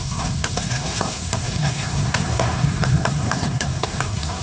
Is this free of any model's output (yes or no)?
no